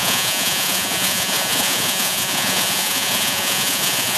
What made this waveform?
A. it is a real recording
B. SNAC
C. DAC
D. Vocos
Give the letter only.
D